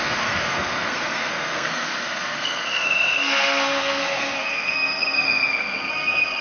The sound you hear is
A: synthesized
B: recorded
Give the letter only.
A